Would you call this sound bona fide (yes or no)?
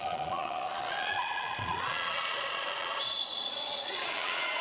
no